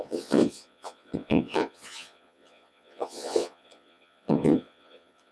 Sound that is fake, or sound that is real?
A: fake